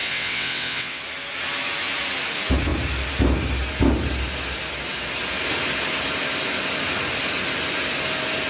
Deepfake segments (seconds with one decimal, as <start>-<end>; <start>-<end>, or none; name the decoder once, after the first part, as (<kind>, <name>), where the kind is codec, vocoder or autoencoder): 0.0-1.0 (vocoder, WaveNeXt)